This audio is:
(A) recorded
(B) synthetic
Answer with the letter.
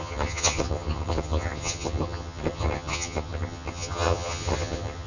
B